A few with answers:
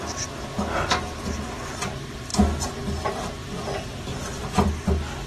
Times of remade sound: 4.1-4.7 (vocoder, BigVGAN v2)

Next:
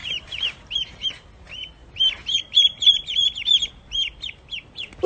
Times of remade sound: 0.0-1.1 (vocoder, BigVGAN v2); 1.8-2.4

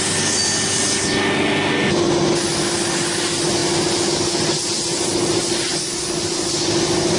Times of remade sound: none

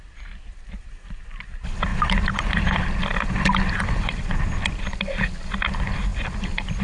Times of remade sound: 1.9-4.3 (vocoder, BigVGAN v2)

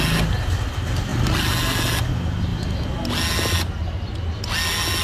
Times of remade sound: none

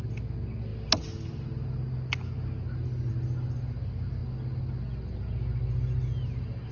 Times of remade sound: none

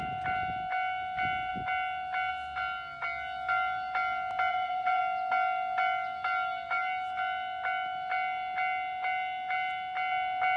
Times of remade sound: 4.5-5.0 (vocoder, BigVGAN v2)